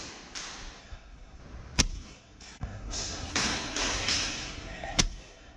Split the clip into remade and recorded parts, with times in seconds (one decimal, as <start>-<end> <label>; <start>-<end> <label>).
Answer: 0.0-0.8 recorded; 0.8-1.4 remade; 1.4-1.9 recorded; 1.9-5.6 remade